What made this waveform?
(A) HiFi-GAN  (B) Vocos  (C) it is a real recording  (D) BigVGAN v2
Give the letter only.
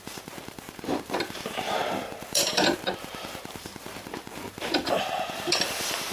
D